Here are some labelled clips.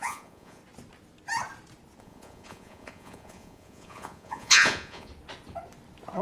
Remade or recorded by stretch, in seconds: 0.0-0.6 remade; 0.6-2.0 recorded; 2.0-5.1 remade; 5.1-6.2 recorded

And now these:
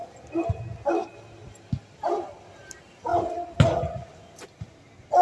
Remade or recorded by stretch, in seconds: 0.0-5.2 recorded